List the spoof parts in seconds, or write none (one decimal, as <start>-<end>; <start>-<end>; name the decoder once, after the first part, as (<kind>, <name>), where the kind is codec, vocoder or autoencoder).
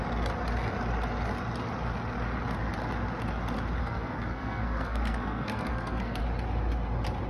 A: 3.8-6.2 (codec, SNAC)